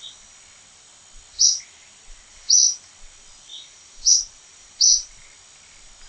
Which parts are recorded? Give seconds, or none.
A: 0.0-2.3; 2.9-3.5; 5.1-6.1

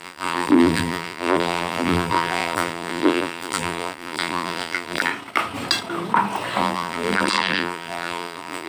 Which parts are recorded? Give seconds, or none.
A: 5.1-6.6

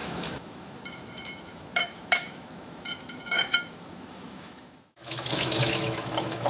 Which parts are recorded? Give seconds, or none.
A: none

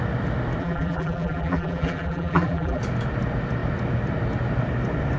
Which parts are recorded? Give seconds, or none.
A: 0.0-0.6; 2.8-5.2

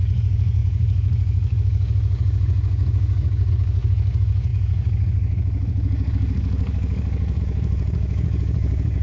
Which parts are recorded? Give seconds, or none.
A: none

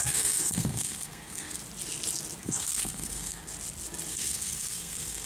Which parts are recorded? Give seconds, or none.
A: 1.6-2.4; 3.5-4.1